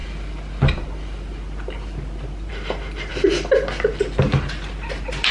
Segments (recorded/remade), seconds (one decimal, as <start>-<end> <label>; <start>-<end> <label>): 0.0-5.3 recorded